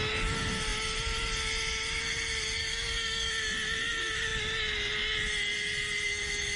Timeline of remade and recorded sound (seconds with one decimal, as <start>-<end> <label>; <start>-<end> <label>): 0.0-2.6 recorded; 2.6-3.3 remade; 3.3-6.6 recorded